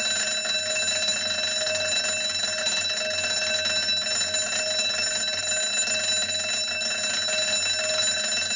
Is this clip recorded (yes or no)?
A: yes